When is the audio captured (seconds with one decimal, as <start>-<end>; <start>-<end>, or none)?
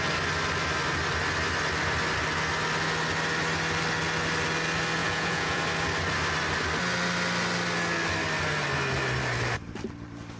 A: 0.0-5.0; 5.6-10.4